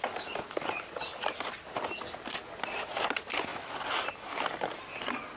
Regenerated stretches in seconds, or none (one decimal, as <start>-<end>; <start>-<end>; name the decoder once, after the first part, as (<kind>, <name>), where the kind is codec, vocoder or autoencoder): none